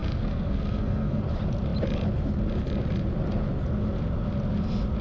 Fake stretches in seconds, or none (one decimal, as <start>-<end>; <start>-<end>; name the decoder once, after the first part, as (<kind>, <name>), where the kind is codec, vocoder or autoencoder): 0.0-1.2 (codec, SNAC)